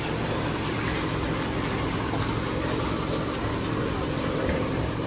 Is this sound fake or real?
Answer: real